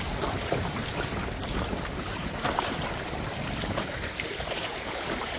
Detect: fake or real fake